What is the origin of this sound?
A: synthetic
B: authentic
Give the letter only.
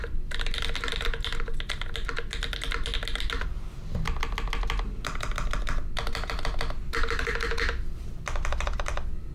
B